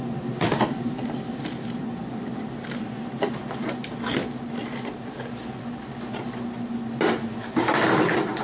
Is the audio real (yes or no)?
yes